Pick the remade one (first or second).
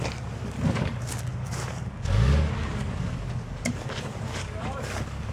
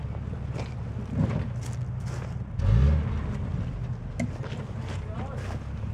first